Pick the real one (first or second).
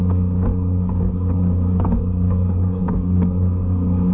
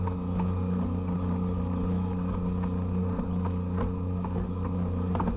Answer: second